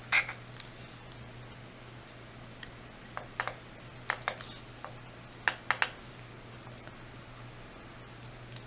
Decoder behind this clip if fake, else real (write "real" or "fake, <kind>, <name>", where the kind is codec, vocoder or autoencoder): real